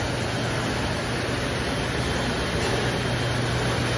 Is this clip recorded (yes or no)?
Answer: yes